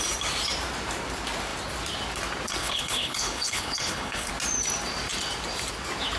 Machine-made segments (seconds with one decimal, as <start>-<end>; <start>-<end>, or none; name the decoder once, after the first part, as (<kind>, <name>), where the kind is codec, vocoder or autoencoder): 2.6-4.3 (codec, HILCodec)